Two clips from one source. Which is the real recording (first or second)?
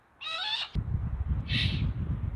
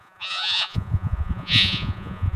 first